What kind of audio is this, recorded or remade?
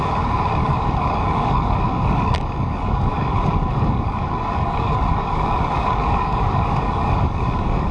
remade